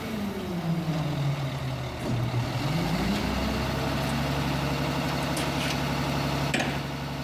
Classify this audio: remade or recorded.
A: recorded